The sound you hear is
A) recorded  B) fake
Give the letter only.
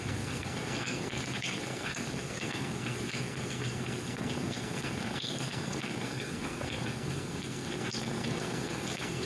B